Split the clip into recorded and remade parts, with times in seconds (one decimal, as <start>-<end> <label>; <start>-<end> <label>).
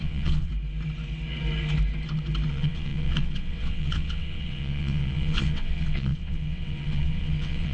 0.0-0.5 remade; 0.5-2.5 recorded; 2.5-7.7 remade